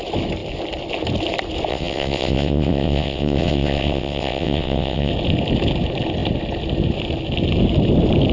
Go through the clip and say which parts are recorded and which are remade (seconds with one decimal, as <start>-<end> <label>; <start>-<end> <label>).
0.0-1.7 recorded; 1.7-5.1 remade; 5.1-8.3 recorded